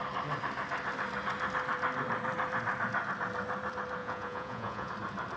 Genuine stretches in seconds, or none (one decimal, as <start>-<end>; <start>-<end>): 0.0-4.0; 4.9-5.4